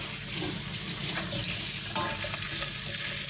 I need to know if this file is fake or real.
real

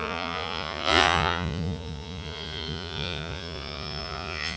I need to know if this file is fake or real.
fake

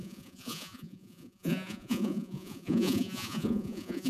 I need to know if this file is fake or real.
fake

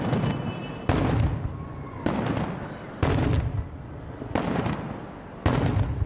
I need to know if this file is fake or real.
real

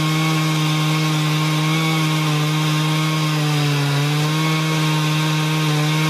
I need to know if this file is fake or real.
real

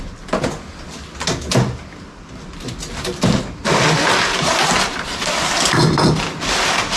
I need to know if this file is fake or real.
real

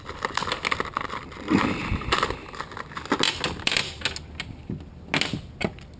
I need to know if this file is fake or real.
real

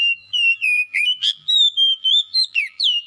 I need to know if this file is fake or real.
fake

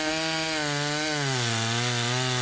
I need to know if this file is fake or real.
real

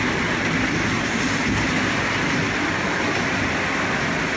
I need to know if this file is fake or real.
real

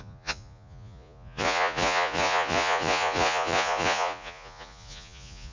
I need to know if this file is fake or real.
fake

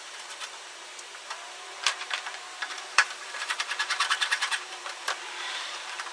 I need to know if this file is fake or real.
fake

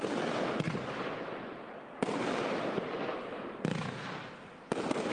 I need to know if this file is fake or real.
real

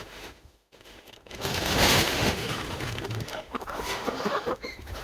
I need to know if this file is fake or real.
fake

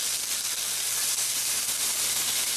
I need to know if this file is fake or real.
real